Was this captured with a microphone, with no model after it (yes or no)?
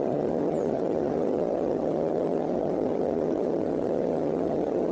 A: no